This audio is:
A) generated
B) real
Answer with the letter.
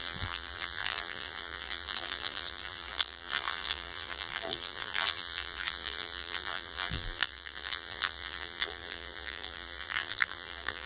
A